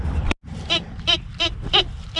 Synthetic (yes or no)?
no